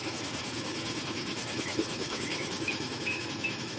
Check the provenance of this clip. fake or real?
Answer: fake